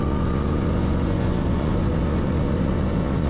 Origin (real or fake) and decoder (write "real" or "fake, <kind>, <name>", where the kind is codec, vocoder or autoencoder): fake, vocoder, Vocos